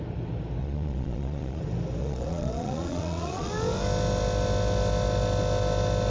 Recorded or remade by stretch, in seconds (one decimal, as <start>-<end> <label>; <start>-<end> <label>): 0.0-0.6 recorded; 0.6-1.6 remade; 1.6-2.0 recorded; 2.0-3.5 remade; 3.5-6.1 recorded